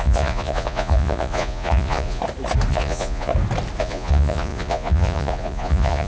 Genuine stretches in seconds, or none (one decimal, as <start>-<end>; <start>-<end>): 2.2-2.7; 3.3-3.8

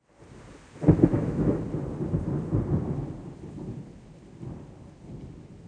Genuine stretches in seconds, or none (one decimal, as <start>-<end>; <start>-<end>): 0.0-1.1; 1.6-5.7

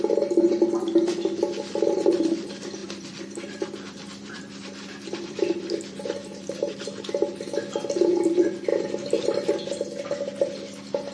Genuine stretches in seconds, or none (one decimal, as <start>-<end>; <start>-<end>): 0.0-2.8; 6.7-8.7; 9.5-11.1

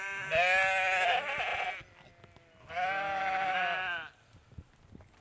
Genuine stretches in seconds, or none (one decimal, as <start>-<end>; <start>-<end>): 0.0-5.2

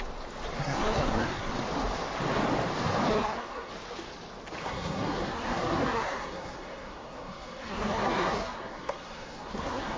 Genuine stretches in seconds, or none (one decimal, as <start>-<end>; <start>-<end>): 0.0-0.6; 1.5-3.1; 3.7-4.6

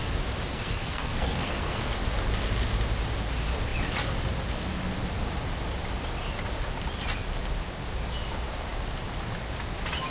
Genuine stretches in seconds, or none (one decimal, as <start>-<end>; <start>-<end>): 0.0-0.5; 2.0-10.1